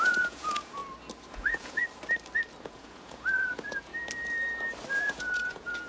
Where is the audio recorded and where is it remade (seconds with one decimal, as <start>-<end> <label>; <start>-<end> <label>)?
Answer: 0.0-0.8 remade; 0.8-1.3 recorded; 1.3-1.8 remade; 1.8-2.6 recorded; 2.6-3.9 remade; 3.9-5.0 recorded; 5.0-5.9 remade